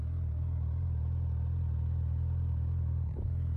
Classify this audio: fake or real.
real